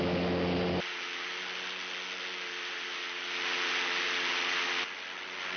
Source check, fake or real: real